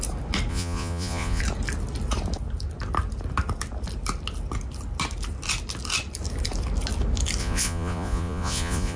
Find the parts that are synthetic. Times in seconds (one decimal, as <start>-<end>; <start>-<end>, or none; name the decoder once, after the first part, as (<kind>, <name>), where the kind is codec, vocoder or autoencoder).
0.5-1.4 (vocoder, Vocos); 7.4-9.0